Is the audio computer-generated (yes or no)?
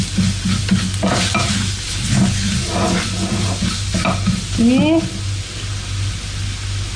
no